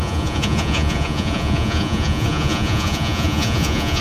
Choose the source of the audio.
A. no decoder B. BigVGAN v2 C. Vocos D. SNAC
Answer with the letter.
C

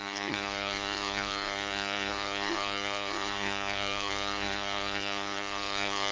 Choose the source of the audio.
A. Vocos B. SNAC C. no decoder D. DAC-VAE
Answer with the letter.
B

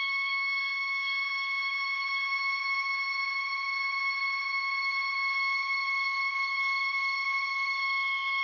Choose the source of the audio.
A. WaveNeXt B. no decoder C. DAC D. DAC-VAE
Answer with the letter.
C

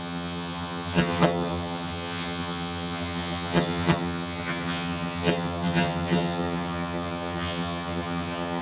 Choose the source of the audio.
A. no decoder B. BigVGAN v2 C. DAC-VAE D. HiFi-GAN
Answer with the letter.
D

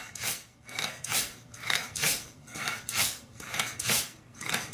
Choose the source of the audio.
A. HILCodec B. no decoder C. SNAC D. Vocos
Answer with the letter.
C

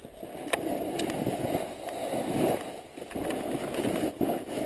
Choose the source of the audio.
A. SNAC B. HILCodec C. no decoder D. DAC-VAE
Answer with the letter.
C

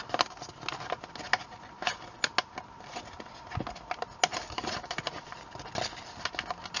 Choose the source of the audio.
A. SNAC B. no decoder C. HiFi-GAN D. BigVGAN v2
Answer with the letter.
B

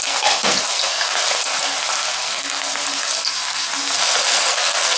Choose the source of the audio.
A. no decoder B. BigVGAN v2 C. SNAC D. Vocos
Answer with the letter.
C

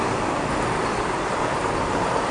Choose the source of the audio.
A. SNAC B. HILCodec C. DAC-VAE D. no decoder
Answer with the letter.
D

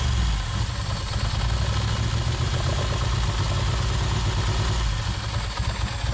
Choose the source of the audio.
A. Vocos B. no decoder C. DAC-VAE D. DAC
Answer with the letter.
B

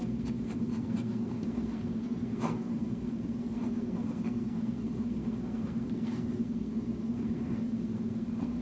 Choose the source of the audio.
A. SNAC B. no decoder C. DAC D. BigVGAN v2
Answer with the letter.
A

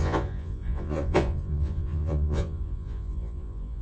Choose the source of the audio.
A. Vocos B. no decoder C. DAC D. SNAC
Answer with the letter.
A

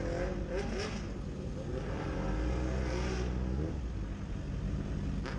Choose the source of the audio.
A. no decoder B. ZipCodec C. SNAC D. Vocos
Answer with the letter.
A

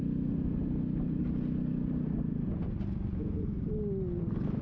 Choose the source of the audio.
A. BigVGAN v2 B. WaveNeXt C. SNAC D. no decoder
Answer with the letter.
D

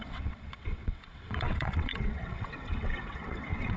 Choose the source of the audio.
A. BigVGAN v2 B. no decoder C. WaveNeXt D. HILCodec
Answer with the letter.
C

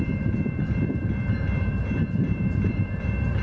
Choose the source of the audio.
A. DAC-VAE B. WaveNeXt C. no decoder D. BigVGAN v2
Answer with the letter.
D